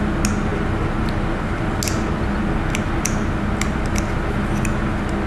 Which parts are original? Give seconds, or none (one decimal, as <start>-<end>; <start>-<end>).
0.0-5.3